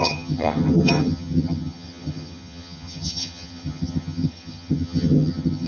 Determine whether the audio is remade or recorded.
remade